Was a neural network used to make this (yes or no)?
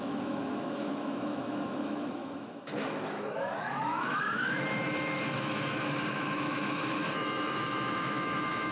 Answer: yes